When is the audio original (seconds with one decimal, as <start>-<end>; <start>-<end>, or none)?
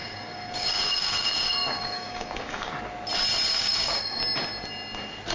2.7-3.5; 4.2-5.3